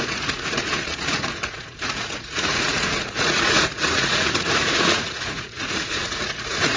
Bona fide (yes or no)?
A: no